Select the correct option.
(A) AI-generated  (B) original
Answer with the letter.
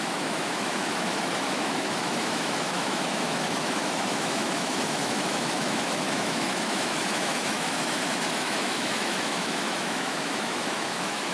A